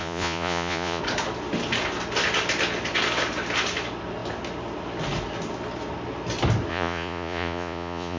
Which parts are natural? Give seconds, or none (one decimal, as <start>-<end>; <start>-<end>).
1.0-6.7